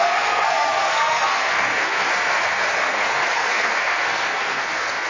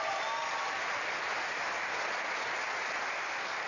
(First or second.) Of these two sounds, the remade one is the first